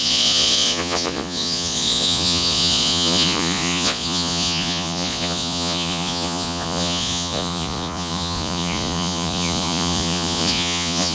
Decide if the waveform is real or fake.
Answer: fake